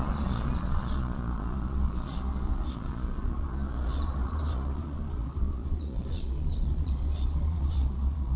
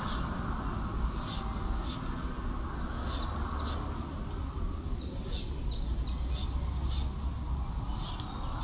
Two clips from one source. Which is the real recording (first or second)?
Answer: second